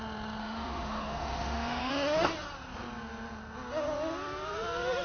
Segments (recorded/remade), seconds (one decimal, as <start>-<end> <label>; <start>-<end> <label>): 0.0-0.4 recorded; 0.4-1.9 remade; 1.9-5.0 recorded